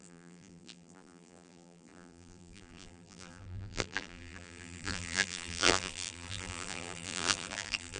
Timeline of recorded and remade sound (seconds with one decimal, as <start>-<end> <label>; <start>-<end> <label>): 0.0-8.0 remade